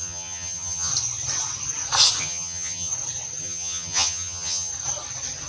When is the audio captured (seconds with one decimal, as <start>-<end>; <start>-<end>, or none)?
0.9-2.2; 2.9-3.4; 4.7-5.5